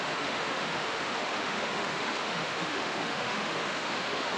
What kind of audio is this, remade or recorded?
remade